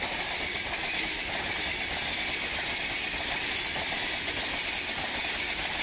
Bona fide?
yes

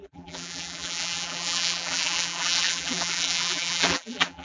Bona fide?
no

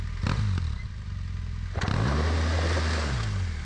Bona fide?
yes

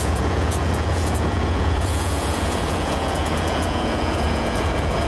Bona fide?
no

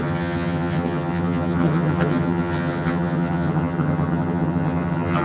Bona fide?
no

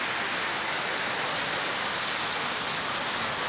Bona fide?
yes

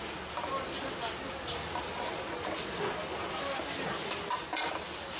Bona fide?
yes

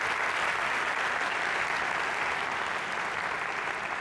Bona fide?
yes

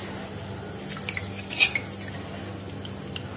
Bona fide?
yes